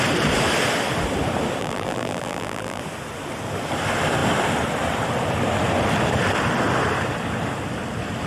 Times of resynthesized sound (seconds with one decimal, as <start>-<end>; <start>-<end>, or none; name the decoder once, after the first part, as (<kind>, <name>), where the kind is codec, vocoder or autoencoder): 1.6-2.8 (vocoder, BigVGAN v2)